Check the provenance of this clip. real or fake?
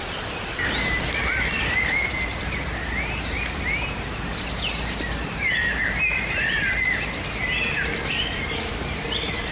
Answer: fake